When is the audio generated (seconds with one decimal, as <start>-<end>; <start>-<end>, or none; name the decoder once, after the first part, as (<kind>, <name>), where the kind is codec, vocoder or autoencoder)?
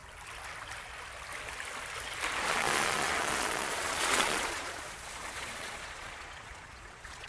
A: 2.5-7.3 (vocoder, Vocos)